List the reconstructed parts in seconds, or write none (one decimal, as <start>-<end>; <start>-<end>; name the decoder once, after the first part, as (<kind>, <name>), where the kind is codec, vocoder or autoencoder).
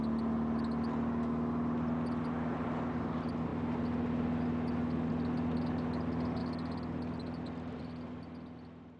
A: none